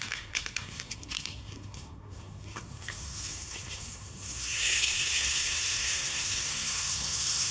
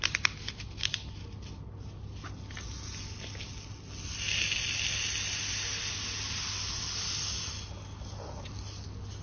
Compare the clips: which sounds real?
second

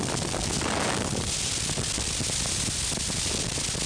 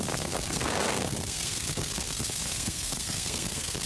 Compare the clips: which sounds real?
first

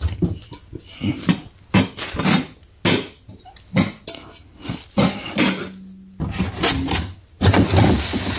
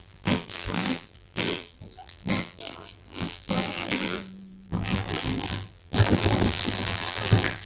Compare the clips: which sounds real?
first